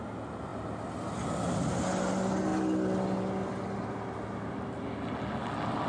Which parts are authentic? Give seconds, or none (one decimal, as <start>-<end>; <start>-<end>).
0.0-5.9